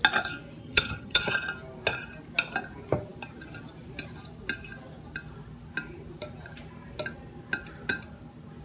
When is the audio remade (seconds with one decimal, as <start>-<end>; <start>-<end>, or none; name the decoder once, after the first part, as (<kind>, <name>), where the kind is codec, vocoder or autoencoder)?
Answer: 0.6-1.3 (vocoder, HiFi-GAN)